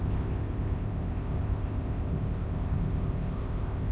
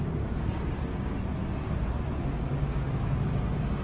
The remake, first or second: first